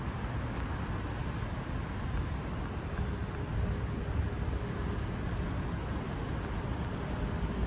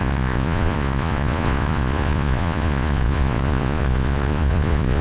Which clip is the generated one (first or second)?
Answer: second